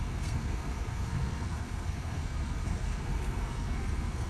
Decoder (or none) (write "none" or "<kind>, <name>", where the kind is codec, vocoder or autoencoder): codec, SNAC